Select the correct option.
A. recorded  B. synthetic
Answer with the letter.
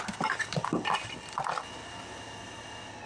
A